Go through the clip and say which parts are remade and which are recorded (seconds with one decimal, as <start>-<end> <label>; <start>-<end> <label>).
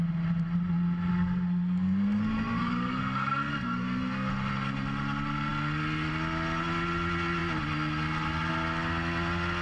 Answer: 0.0-1.1 recorded; 1.1-4.3 remade; 4.3-9.6 recorded